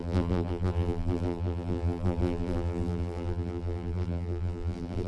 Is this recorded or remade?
remade